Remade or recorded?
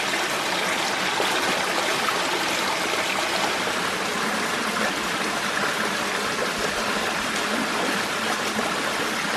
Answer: recorded